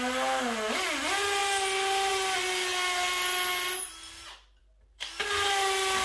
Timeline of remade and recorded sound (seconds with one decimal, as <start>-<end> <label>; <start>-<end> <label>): 0.0-6.0 recorded